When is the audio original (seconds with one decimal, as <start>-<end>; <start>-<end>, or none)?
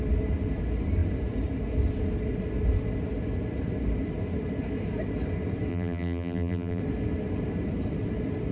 0.0-5.7; 6.8-8.5